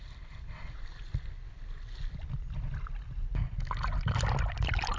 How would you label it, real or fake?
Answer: real